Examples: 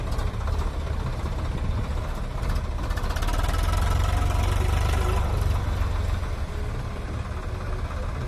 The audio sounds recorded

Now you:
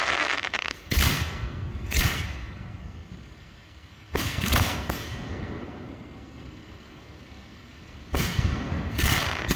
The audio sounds remade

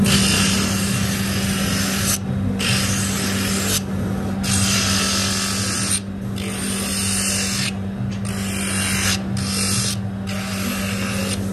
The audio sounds recorded